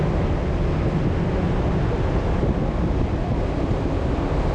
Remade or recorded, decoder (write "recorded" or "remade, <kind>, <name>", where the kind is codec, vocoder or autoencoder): recorded